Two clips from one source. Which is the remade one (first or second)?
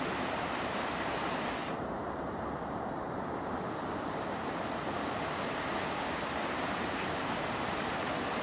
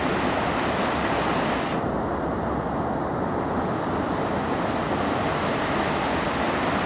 first